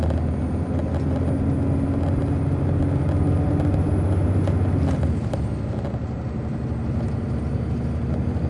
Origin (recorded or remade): recorded